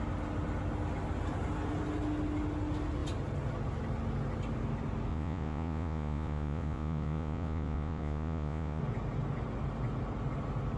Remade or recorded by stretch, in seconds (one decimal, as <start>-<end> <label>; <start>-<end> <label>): 0.0-5.1 recorded; 5.1-8.8 remade; 8.8-10.8 recorded